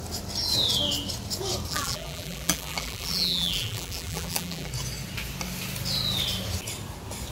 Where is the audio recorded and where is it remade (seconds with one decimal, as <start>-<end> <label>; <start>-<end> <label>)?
0.0-1.7 recorded; 1.7-4.7 remade; 4.7-7.3 recorded